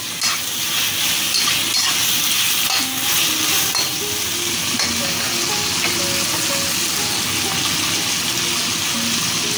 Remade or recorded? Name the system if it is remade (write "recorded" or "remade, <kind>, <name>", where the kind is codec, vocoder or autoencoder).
recorded